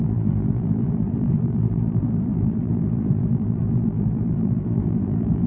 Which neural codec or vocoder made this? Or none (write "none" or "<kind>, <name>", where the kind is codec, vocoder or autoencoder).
vocoder, BigVGAN v2